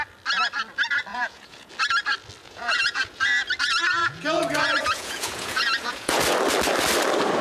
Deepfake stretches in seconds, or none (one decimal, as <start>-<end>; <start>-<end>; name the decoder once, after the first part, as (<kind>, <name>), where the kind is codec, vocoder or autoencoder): 1.1-1.7 (vocoder, Vocos); 2.4-3.3; 4.0-6.2